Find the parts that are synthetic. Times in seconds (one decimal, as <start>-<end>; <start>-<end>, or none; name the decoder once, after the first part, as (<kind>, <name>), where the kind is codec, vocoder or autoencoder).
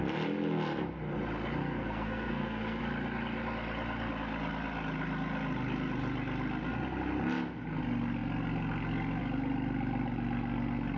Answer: 1.6-2.8 (codec, SNAC)